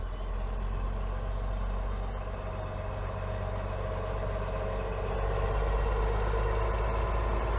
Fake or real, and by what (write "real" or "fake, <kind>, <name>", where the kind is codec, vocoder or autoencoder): real